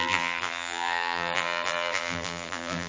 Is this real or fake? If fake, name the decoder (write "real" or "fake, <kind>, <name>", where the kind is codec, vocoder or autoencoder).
fake, vocoder, BigVGAN v2